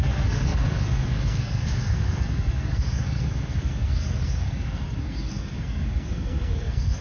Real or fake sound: fake